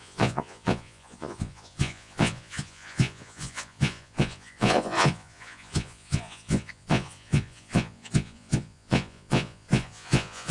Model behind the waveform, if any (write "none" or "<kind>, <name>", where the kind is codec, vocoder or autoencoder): vocoder, Vocos